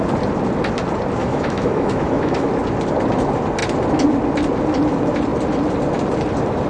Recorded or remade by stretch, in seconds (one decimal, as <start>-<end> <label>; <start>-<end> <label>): 0.0-1.2 recorded; 1.2-2.5 remade; 2.5-6.7 recorded